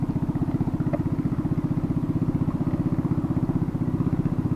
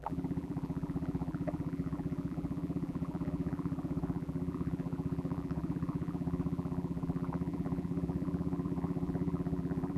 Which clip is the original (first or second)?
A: first